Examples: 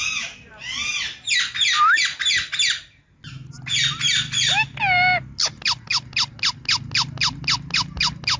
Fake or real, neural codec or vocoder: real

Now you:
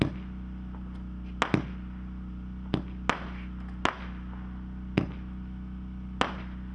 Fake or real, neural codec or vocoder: real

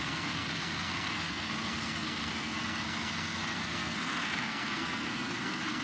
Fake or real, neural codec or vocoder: fake, codec, SNAC